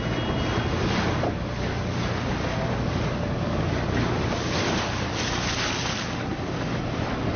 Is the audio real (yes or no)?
yes